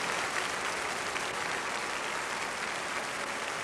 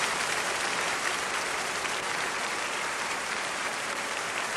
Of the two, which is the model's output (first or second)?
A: second